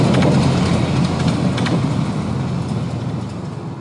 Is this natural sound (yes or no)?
yes